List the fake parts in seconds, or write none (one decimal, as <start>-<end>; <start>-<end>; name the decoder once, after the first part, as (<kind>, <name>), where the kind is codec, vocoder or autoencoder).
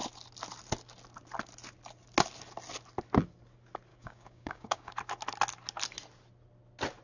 3.9-4.9 (codec, DAC)